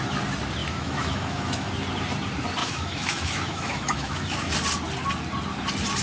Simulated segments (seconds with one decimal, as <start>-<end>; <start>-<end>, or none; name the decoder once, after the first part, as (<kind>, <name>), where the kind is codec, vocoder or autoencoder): 0.6-1.7 (autoencoder, DAC-VAE); 2.6-4.5

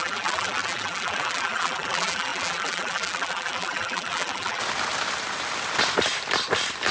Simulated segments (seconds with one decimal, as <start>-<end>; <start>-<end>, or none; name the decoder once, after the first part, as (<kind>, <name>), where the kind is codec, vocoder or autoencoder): 0.0-4.6 (vocoder, BigVGAN v2)

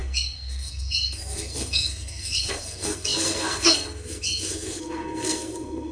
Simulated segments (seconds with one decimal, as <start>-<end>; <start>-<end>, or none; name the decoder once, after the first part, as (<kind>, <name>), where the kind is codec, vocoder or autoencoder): 0.0-5.9 (codec, SNAC)

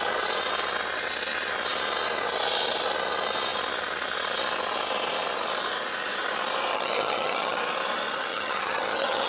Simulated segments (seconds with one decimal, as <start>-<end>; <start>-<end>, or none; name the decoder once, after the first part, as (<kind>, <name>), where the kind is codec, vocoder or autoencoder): 6.7-7.6 (vocoder, HiFi-GAN); 8.3-9.3

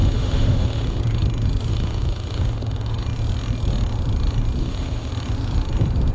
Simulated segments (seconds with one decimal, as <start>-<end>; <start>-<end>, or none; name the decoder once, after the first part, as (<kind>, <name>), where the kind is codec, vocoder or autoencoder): 0.0-1.0 (autoencoder, DAC-VAE); 1.7-2.9; 4.6-5.1

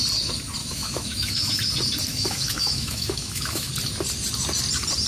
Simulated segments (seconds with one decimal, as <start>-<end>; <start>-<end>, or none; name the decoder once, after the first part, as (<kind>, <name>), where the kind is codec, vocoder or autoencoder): 0.6-1.6 (autoencoder, DAC-VAE); 2.1-3.7

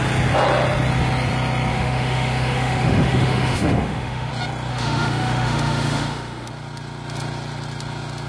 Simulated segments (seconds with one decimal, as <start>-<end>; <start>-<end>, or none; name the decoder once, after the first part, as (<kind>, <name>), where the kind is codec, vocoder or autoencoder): 1.7-4.3 (autoencoder, DAC-VAE); 4.7-6.5